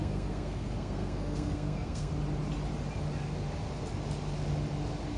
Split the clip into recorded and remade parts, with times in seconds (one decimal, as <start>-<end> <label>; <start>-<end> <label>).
0.0-2.1 remade; 2.1-5.2 recorded